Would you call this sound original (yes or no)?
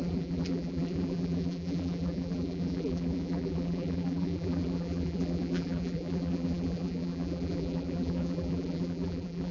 no